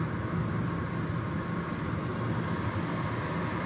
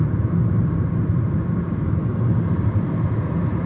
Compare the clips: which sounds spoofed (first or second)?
second